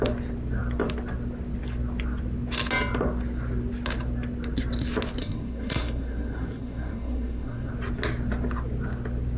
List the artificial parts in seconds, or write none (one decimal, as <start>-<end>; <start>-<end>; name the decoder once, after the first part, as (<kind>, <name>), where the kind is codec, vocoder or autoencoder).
5.2-7.7 (codec, SNAC)